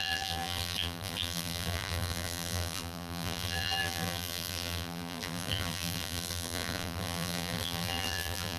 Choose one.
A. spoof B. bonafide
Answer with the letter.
A